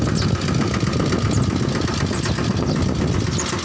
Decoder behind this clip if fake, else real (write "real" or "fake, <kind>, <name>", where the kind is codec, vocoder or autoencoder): real